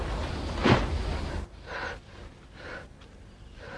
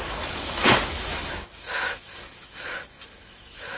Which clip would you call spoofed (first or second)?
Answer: second